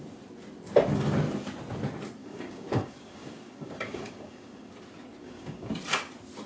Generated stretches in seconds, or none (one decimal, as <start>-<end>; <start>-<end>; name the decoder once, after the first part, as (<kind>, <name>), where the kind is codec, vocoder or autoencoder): 2.2-4.7 (codec, DAC); 5.2-5.7